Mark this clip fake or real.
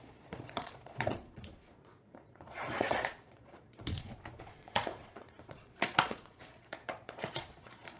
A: fake